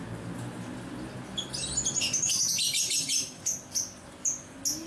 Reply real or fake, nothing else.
real